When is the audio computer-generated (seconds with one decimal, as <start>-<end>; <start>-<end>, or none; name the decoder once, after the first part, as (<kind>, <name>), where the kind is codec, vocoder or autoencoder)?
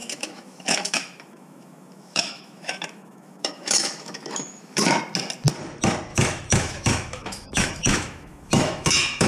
0.0-5.0 (autoencoder, DAC-VAE); 6.1-9.3